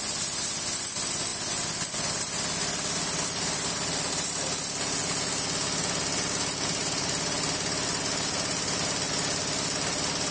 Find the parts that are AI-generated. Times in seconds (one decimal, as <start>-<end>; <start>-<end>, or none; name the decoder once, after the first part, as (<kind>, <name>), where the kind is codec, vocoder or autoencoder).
none